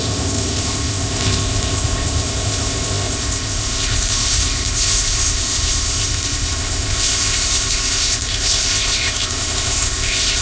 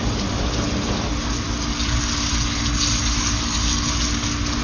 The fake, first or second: first